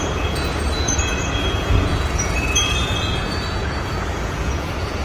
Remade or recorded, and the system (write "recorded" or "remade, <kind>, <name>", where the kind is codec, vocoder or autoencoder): remade, vocoder, Vocos